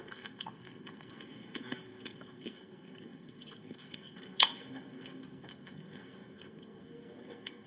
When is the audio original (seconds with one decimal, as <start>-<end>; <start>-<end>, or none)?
none